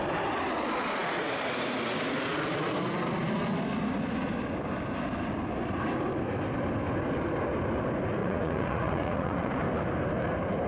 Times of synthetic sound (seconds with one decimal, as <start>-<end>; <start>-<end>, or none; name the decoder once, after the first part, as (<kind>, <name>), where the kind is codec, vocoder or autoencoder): 8.2-9.5 (vocoder, Vocos)